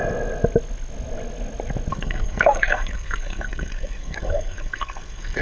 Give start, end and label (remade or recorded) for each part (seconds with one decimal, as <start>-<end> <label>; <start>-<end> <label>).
0.0-1.9 recorded; 1.9-5.4 remade

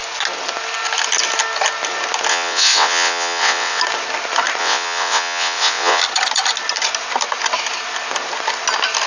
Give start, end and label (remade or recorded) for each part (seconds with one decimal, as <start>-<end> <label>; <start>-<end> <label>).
0.0-2.3 recorded; 2.3-3.8 remade; 3.8-4.6 recorded; 4.6-6.0 remade; 6.0-9.1 recorded

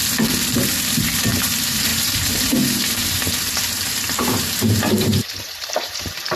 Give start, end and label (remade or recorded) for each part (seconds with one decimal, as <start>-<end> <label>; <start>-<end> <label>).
0.0-1.4 recorded; 1.4-6.4 remade

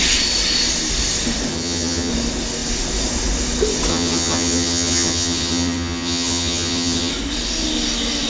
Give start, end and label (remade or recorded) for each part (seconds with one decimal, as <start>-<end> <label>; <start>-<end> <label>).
0.0-1.5 recorded; 1.5-2.1 remade; 2.1-3.9 recorded; 3.9-7.1 remade; 7.1-8.3 recorded

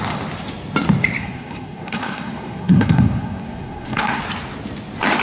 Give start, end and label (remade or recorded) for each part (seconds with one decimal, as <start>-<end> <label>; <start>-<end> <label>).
0.0-1.2 recorded; 1.2-4.2 remade; 4.2-5.2 recorded

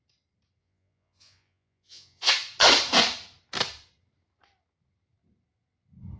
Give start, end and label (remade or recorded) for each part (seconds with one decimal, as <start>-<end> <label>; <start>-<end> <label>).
0.0-0.6 recorded; 0.6-2.3 remade; 2.3-6.2 recorded